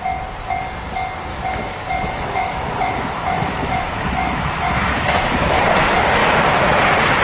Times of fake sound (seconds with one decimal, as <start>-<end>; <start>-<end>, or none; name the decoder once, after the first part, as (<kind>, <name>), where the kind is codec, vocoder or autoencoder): 1.3-5.6 (autoencoder, DAC-VAE); 6.2-6.8

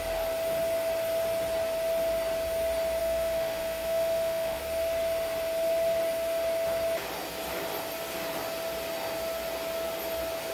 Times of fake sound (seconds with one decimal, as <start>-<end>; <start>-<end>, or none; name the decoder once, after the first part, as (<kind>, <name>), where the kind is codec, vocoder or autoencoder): 3.0-4.6 (autoencoder, DAC-VAE)

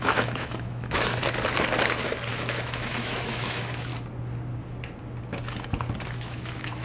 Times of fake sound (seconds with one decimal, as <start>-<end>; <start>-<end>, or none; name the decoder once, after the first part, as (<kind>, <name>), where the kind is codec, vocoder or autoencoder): 0.0-1.2 (autoencoder, DAC-VAE); 2.3-3.9; 6.1-6.8

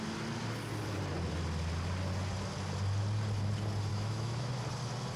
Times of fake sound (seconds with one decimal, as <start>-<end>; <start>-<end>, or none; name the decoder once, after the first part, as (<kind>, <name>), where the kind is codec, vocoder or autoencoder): 3.9-4.5 (autoencoder, DAC-VAE)